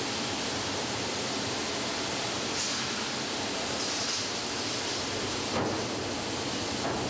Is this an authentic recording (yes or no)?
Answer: yes